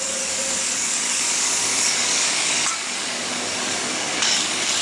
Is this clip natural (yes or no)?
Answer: no